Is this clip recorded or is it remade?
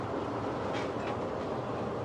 recorded